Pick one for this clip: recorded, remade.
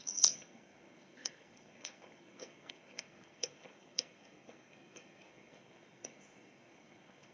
remade